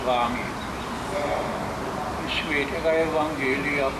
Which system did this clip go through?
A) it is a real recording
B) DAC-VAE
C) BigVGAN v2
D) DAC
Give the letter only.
A